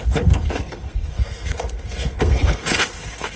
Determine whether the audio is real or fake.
fake